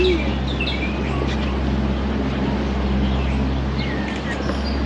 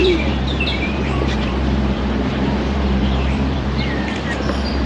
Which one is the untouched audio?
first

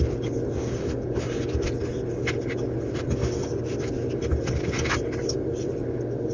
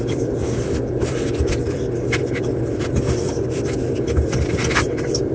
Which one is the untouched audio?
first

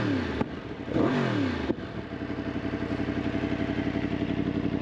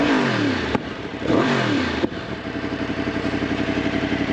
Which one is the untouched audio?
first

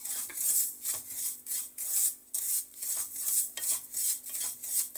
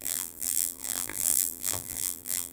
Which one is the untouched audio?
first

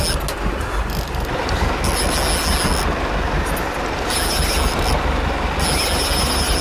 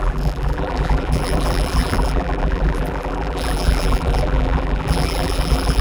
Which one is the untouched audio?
first